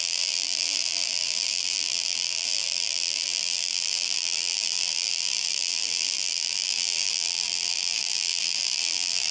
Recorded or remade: remade